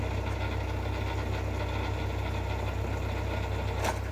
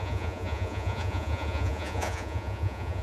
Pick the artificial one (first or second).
second